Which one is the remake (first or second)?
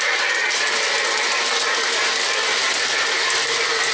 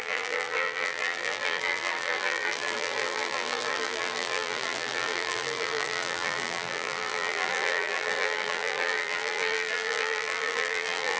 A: second